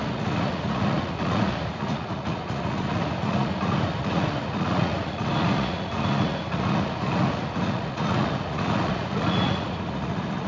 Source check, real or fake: fake